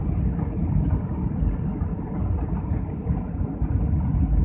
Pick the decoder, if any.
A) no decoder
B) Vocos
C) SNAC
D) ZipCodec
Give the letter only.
A